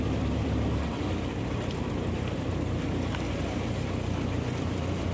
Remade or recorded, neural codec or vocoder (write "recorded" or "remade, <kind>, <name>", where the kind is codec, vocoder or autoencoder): remade, vocoder, BigVGAN v2